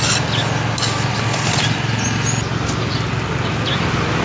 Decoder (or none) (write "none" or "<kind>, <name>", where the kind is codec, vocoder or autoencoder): none